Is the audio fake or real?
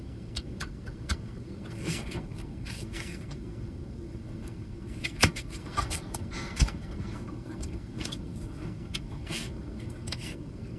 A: fake